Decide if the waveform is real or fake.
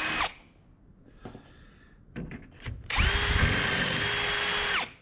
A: real